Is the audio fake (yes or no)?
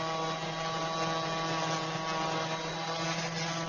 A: no